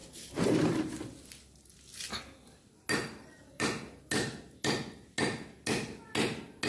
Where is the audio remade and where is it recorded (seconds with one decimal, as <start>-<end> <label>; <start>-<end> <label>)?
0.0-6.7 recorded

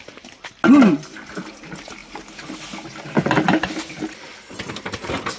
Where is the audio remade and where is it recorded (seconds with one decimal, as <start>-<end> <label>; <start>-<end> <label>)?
0.0-5.4 recorded

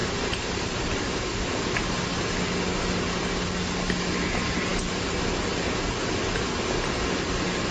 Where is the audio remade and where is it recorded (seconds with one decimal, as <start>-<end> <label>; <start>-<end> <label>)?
0.0-1.5 remade; 1.5-7.7 recorded